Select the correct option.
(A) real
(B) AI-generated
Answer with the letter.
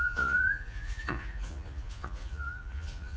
B